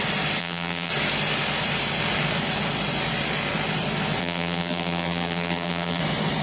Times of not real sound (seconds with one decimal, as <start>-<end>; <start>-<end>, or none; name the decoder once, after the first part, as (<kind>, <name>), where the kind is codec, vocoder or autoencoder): 0.4-0.9 (vocoder, BigVGAN v2); 4.2-6.0

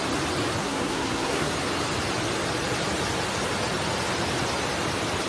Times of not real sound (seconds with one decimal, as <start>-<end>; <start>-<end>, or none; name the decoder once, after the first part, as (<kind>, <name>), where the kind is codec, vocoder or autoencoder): 0.6-1.5 (codec, SNAC)

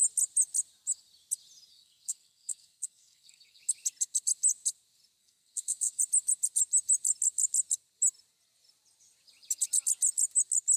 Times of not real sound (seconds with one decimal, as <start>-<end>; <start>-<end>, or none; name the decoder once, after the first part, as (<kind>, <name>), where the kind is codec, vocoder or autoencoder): 1.7-3.6 (codec, SNAC); 5.2-6.0

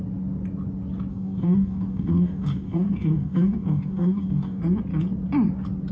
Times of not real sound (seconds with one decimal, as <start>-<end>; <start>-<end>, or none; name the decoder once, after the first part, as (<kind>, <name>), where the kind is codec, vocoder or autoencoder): 1.1-4.6 (codec, DAC)

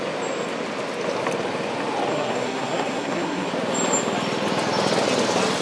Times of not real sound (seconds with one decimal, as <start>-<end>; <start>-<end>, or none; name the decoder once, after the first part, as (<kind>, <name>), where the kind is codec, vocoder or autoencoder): 2.1-3.5 (codec, SNAC)